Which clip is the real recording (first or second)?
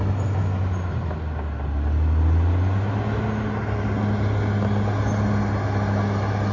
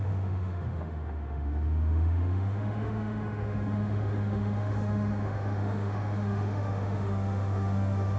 first